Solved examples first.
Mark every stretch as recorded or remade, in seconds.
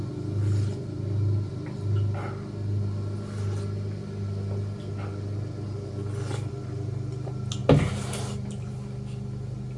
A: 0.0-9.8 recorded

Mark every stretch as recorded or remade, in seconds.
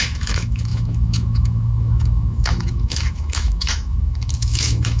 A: 0.0-5.0 remade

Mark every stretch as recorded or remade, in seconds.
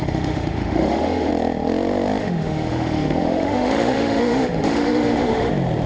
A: 0.0-1.3 remade; 1.3-2.2 recorded; 2.2-5.5 remade; 5.5-5.9 recorded